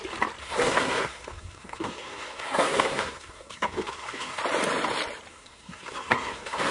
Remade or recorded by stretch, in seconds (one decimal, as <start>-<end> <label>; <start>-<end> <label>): 0.0-0.4 recorded; 0.4-4.4 remade; 4.4-5.3 recorded; 5.3-6.7 remade